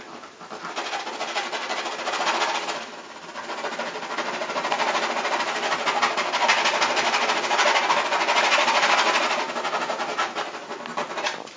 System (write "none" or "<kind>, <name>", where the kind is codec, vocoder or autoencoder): none